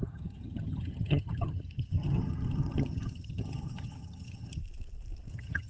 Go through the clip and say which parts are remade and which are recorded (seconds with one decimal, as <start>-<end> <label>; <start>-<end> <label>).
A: 0.0-4.6 remade; 4.6-5.3 recorded; 5.3-5.7 remade